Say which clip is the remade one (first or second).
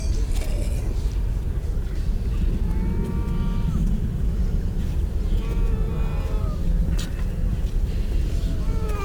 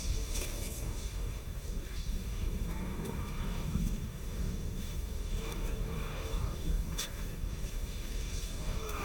second